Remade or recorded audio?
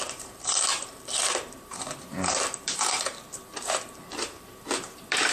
remade